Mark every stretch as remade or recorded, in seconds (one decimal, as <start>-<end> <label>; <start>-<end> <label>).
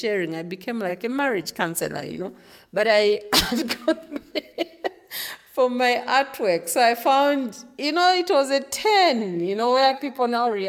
0.0-0.9 recorded; 0.9-4.9 remade; 4.9-9.2 recorded; 9.2-10.7 remade